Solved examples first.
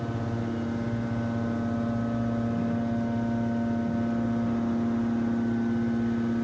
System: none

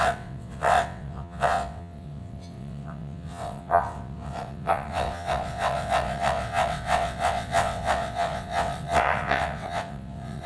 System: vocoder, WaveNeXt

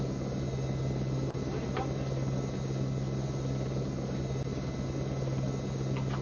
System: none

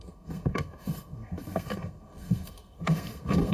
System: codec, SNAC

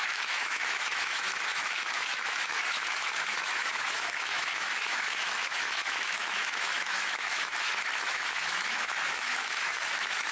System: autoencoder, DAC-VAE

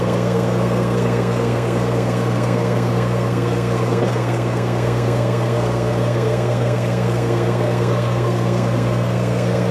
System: codec, SNAC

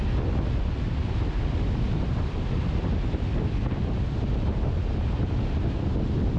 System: none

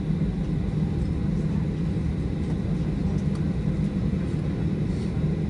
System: none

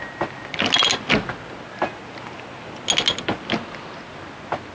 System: none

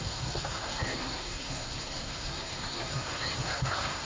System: codec, SNAC